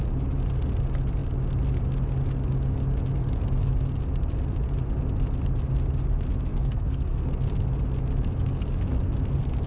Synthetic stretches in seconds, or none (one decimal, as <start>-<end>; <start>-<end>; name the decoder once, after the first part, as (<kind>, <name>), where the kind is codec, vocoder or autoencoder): 6.5-7.3 (codec, SNAC)